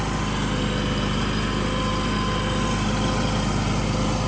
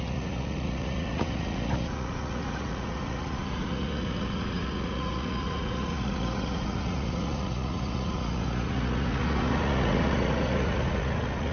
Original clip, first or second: first